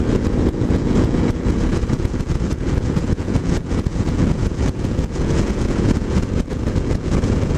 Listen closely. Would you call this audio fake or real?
fake